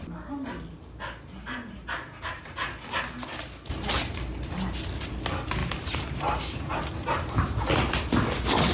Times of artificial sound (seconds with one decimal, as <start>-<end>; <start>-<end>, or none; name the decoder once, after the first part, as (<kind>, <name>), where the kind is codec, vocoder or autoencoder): 5.6-6.9 (vocoder, BigVGAN v2)